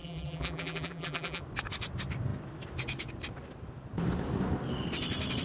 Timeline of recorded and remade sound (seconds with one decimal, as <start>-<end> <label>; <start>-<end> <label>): 0.0-1.4 remade; 1.4-5.4 recorded